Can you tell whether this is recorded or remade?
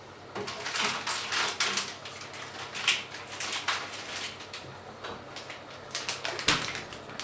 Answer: recorded